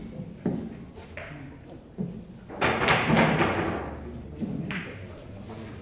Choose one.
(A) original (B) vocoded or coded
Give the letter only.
A